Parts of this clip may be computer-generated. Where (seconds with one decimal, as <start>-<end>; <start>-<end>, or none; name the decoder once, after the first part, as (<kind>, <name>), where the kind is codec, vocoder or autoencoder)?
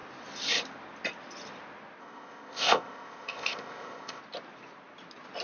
2.0-4.2 (codec, ZipCodec)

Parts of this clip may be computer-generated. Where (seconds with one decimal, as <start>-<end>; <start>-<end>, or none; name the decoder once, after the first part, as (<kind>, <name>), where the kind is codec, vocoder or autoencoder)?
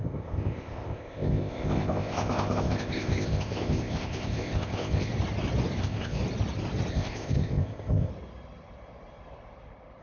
0.0-5.1 (codec, ZipCodec); 5.8-6.2; 6.9-8.1